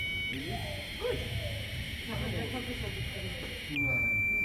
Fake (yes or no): no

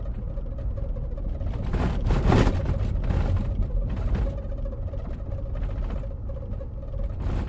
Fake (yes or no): no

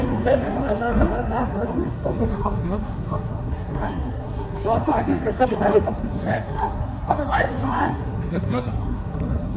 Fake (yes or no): yes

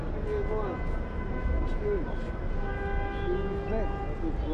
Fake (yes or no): no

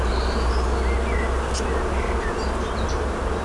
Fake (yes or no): no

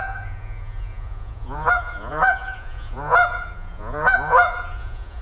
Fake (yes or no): yes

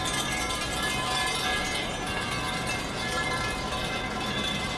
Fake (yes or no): no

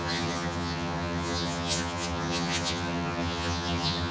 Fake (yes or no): yes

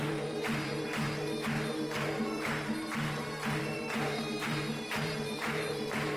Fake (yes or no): yes